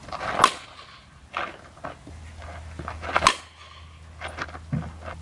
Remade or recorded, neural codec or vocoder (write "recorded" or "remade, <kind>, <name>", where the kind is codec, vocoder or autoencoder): recorded